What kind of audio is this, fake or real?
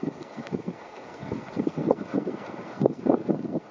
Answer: fake